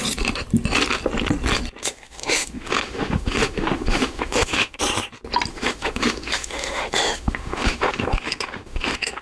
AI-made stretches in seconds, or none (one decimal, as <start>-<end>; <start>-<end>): 1.8-4.8; 5.5-9.2